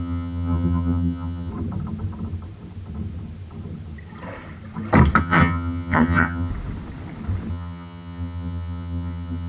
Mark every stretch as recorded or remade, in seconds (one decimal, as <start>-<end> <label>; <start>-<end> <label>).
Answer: 0.0-1.5 remade; 1.5-5.2 recorded; 5.2-6.5 remade; 6.5-7.5 recorded; 7.5-9.5 remade